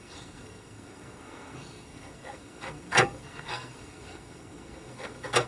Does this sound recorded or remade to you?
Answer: remade